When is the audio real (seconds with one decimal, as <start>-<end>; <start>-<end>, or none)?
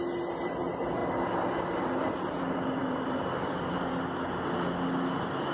0.0-1.0; 3.9-5.5